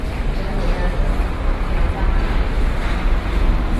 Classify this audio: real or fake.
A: real